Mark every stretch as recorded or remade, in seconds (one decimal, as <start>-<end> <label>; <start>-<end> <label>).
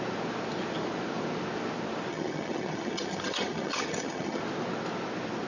0.0-2.1 recorded; 2.1-4.4 remade; 4.4-5.5 recorded